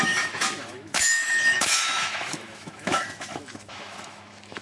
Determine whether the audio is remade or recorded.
remade